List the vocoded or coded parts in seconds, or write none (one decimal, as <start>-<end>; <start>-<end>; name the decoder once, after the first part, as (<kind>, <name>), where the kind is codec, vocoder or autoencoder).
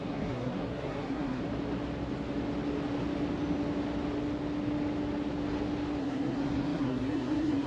0.0-1.4 (codec, SNAC); 6.0-7.7